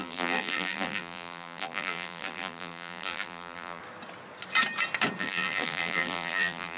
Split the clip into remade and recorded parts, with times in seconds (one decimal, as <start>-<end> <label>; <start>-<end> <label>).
0.0-3.8 remade; 3.8-5.2 recorded; 5.2-6.8 remade